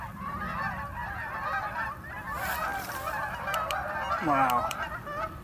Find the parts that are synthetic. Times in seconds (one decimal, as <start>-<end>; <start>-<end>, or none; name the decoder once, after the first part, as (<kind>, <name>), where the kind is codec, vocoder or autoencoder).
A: none